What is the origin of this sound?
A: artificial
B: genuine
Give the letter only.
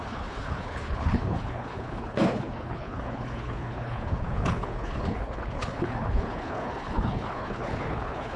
A